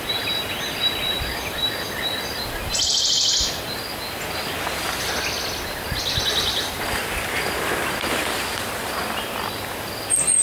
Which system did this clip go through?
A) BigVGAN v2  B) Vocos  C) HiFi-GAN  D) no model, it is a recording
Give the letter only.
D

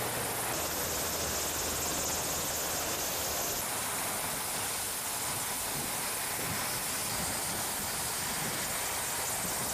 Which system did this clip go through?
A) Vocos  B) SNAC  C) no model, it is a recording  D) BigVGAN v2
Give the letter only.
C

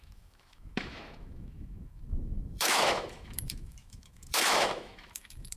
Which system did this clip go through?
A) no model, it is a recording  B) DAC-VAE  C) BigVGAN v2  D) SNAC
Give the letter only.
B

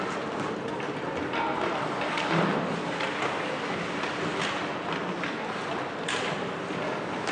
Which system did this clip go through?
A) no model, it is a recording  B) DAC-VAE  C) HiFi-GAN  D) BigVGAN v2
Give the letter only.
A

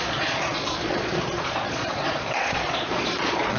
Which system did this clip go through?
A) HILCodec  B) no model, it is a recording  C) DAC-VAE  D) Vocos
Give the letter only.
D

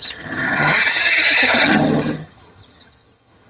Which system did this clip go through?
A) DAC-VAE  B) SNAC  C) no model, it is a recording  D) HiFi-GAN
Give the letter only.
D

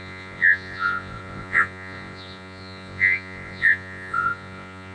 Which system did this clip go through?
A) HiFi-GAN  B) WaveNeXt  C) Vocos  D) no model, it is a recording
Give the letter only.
C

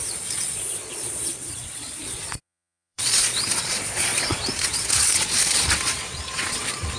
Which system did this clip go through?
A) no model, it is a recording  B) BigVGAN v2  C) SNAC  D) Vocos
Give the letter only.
D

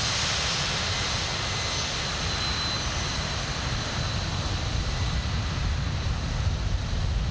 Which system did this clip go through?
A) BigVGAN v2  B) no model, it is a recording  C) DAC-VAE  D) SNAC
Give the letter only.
B